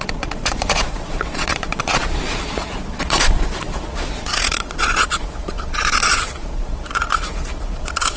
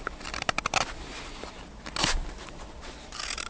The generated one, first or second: first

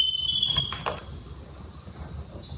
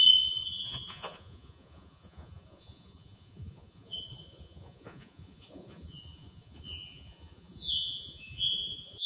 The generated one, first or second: second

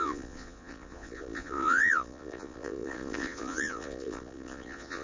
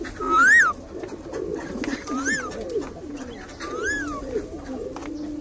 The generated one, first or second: first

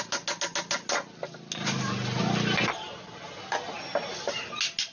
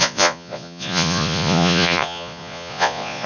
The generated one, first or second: second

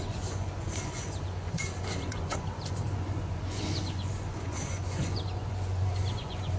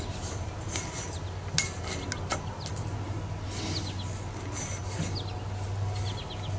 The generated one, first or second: first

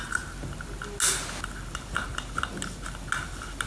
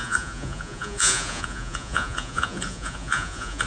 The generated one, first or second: second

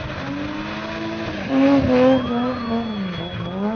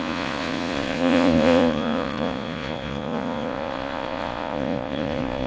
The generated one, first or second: second